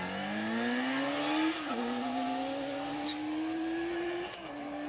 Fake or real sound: real